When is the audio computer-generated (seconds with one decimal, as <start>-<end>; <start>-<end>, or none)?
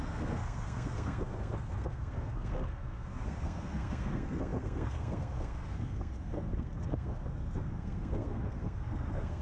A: 0.0-9.4